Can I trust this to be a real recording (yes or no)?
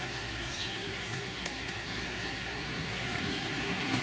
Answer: no